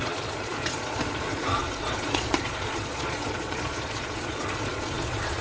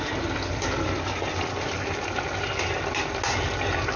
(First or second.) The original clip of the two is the second